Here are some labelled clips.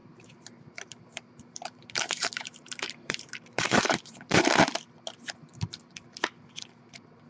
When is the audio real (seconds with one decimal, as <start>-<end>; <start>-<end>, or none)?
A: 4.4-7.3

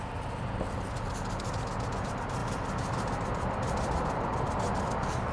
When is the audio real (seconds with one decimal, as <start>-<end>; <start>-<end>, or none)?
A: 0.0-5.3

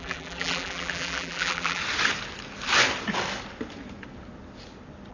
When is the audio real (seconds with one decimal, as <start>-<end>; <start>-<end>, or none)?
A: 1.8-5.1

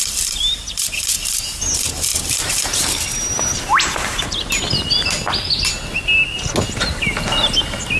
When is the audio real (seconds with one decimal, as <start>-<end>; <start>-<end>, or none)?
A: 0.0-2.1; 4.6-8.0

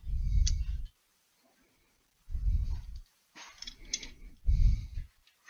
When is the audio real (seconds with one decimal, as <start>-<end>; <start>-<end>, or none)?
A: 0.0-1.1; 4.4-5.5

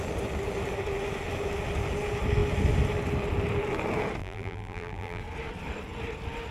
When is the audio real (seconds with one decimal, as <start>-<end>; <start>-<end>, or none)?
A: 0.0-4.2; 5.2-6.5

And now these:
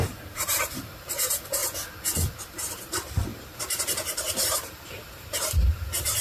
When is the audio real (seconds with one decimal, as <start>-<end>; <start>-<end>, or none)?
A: 1.6-2.8